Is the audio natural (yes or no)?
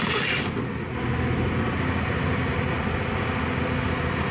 yes